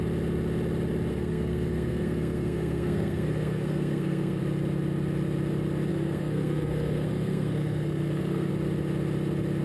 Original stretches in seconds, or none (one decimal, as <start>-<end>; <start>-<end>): 0.0-1.1; 4.4-5.9; 8.5-9.6